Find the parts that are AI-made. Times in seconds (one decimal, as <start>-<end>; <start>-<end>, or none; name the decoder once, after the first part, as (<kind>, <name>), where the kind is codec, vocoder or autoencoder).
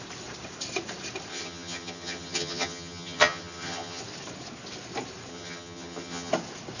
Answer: 1.3-4.0 (vocoder, HiFi-GAN); 5.3-6.3